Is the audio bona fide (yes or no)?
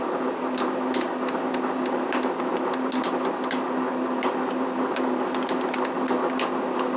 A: yes